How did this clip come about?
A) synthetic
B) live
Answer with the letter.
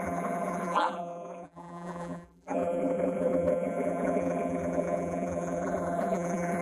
A